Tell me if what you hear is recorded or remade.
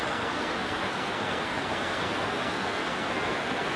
remade